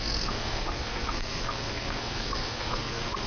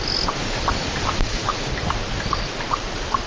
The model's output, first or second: first